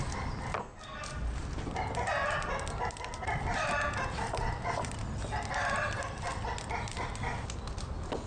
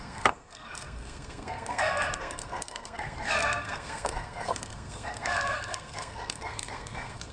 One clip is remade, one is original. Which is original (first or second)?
first